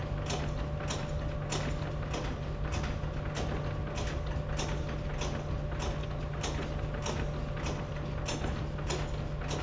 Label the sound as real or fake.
real